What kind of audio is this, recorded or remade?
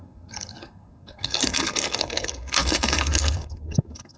remade